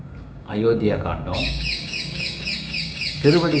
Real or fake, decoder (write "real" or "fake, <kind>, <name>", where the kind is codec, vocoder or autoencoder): fake, codec, DAC